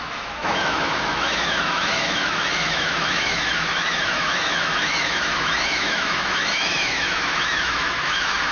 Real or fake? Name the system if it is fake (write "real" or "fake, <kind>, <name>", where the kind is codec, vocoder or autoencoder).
fake, autoencoder, DAC-VAE